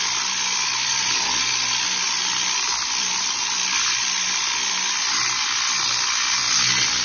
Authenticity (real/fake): real